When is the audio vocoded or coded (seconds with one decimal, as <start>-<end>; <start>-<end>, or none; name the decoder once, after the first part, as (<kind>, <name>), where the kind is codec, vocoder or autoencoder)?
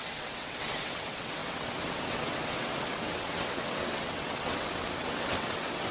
0.0-5.9 (vocoder, WaveNeXt)